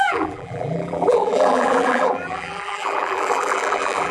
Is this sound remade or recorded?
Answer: remade